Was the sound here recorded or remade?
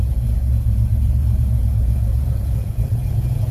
remade